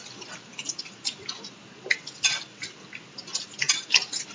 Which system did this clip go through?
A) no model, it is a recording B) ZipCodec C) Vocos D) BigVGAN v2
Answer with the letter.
A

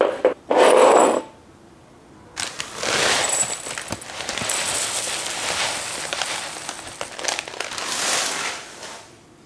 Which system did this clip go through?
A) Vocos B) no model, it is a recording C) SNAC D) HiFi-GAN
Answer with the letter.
B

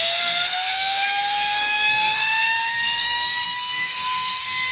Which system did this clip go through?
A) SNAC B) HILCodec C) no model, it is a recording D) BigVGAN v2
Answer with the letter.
A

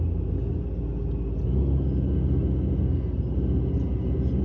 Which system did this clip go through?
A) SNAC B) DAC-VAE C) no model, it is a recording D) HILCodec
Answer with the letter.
C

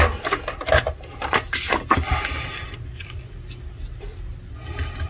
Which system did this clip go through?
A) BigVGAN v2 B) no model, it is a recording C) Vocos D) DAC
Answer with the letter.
B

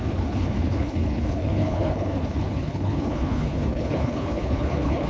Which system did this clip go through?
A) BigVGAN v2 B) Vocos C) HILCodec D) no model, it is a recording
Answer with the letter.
C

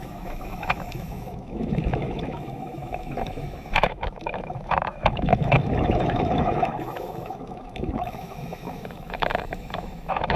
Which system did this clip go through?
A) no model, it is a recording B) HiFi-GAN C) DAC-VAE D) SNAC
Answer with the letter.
C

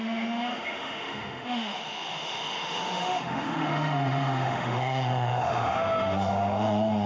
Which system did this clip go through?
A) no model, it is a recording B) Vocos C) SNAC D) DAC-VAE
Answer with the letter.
D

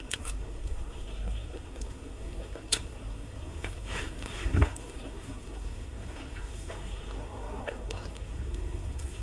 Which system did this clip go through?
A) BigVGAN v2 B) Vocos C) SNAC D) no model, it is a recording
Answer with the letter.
C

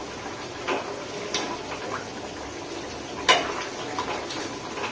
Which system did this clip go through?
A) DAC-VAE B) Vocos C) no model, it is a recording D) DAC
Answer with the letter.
C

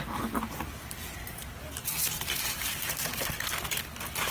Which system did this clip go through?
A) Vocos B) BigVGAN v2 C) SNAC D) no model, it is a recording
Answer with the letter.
D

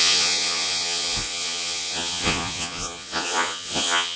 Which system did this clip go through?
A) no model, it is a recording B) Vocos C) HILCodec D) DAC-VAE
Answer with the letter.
B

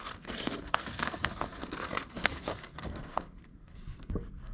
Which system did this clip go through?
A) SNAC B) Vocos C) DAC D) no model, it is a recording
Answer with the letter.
A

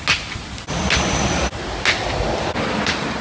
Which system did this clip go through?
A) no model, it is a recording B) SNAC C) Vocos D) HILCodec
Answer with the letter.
A